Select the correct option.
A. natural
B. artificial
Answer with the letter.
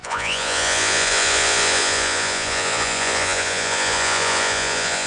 B